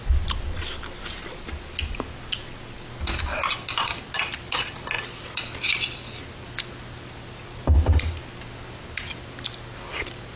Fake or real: real